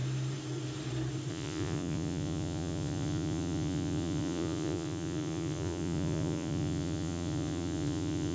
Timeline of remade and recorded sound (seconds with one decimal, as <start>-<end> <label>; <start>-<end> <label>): 0.0-1.3 recorded; 1.3-8.3 remade